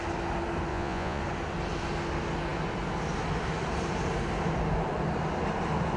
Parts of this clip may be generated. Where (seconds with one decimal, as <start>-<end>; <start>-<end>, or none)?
0.7-1.2